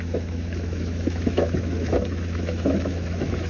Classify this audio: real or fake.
fake